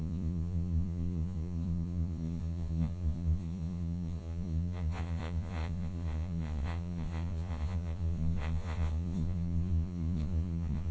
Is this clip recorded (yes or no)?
no